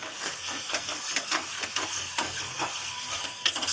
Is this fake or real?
fake